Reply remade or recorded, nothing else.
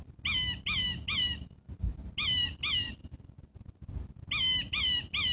recorded